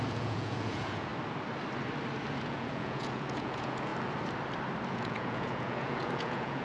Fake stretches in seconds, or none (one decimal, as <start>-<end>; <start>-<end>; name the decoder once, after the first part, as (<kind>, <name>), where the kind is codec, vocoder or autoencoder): 0.0-1.1 (vocoder, Vocos); 2.3-3.9; 4.9-6.6